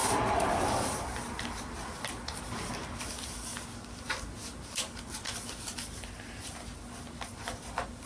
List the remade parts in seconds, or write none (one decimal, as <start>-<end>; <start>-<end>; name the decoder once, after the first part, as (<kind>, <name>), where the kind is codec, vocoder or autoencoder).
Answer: none